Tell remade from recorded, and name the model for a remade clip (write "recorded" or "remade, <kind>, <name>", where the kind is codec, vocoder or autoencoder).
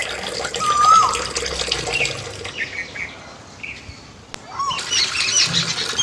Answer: recorded